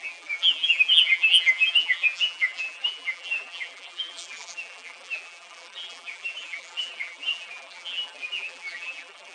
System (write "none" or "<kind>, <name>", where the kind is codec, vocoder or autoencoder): vocoder, BigVGAN v2